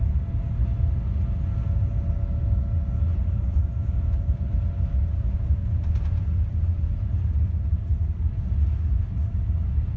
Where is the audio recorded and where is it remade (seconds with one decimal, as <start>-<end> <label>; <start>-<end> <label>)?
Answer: 0.0-3.1 recorded; 3.1-7.8 remade; 7.8-10.0 recorded